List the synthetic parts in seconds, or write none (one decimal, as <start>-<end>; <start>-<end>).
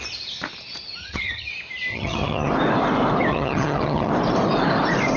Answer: 1.0-1.5; 1.9-2.5; 3.3-4.1